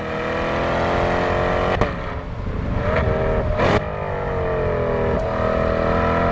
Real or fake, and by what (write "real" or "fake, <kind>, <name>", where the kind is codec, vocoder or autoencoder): real